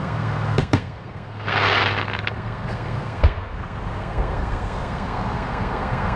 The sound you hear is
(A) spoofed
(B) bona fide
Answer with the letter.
A